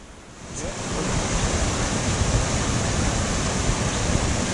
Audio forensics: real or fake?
real